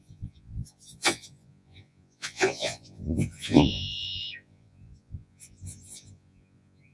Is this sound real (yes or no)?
no